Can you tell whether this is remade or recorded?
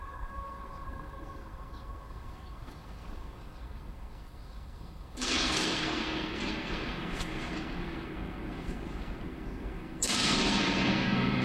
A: remade